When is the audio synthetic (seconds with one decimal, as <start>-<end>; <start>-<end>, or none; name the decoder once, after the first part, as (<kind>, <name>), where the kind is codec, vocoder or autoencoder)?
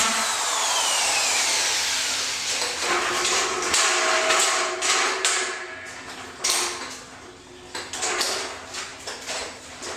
8.9-10.0 (vocoder, BigVGAN v2)